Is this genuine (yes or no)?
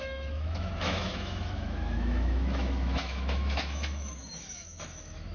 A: no